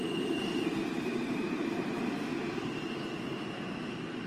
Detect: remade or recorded remade